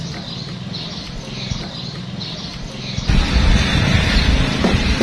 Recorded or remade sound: recorded